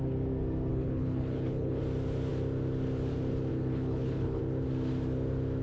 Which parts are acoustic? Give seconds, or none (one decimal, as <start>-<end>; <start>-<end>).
0.0-0.7; 1.8-3.5; 4.4-5.6